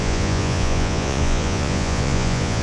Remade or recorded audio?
remade